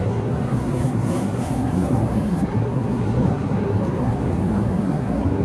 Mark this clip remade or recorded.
remade